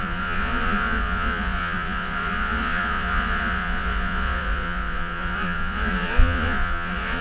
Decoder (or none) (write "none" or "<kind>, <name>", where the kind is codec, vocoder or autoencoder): vocoder, Vocos